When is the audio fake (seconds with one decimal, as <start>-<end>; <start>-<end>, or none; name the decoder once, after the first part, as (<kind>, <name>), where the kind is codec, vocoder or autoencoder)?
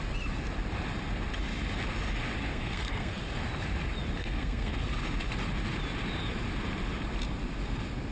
2.5-3.2 (codec, SNAC); 4.2-4.8